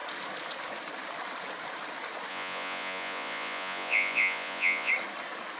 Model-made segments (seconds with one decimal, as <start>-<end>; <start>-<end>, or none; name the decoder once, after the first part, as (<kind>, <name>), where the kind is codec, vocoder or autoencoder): 2.3-4.9 (vocoder, Vocos)

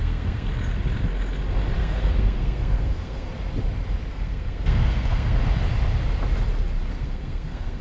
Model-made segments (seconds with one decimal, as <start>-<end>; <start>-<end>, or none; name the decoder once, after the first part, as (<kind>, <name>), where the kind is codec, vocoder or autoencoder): 0.0-0.5 (codec, SNAC); 1.8-3.3; 4.1-5.4; 6.9-7.8

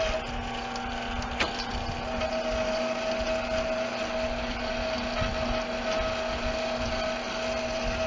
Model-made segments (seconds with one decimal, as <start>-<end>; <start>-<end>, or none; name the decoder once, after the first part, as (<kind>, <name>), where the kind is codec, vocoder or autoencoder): none

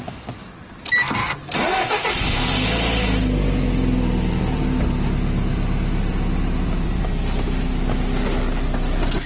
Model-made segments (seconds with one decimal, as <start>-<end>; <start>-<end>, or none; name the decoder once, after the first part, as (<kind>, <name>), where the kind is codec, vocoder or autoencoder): 5.5-7.0 (vocoder, BigVGAN v2)

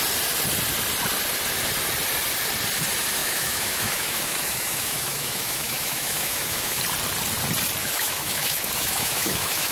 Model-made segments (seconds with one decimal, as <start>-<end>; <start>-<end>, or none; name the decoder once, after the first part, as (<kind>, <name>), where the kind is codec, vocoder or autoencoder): 3.2-6.8 (autoencoder, DAC-VAE); 7.8-9.7

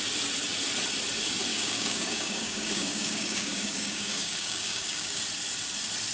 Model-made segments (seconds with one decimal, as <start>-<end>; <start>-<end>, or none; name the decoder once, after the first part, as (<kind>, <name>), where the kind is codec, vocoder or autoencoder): 1.5-5.2 (codec, DAC)